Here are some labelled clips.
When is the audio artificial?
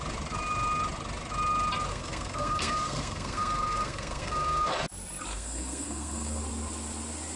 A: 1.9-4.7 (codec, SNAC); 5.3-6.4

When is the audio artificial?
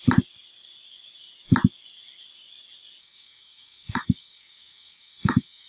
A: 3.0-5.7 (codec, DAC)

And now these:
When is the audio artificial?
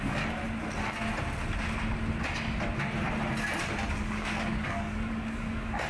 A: 0.0-0.4 (codec, DAC); 3.9-5.9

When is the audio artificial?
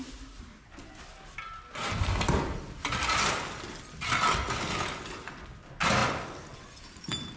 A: none